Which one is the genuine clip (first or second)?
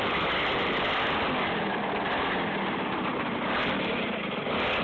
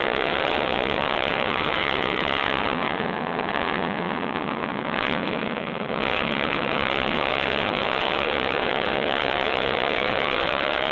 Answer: first